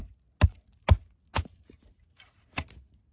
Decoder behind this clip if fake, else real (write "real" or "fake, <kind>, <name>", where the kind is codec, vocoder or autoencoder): real